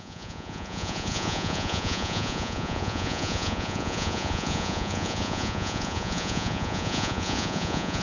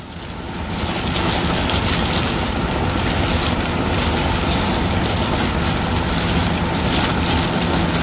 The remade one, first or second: first